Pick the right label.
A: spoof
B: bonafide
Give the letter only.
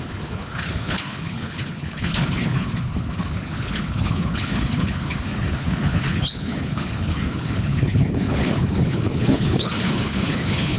A